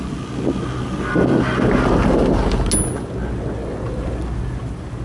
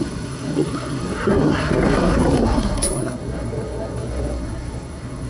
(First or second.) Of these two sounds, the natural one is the first